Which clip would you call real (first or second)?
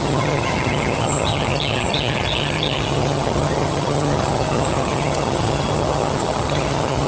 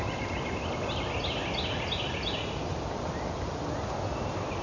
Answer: second